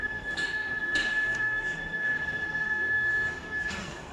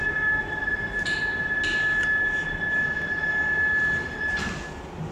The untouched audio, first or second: second